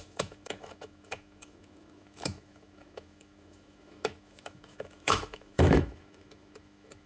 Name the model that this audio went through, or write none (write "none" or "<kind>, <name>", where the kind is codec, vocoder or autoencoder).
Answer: autoencoder, DAC-VAE